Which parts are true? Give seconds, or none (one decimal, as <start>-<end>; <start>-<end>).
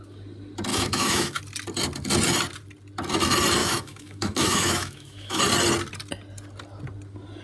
0.0-0.7; 1.4-3.6; 5.4-7.4